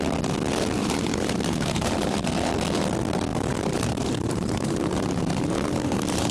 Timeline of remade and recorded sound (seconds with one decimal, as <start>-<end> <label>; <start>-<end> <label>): 0.0-0.8 recorded; 0.8-2.3 remade; 2.3-3.3 recorded; 3.3-6.3 remade